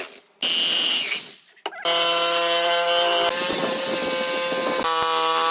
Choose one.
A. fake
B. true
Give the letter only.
B